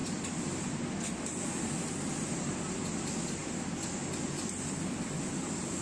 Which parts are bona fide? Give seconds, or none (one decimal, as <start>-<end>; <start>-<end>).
0.0-5.8